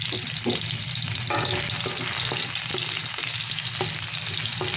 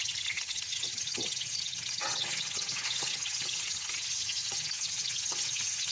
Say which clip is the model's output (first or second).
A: second